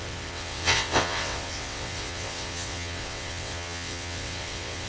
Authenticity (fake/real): fake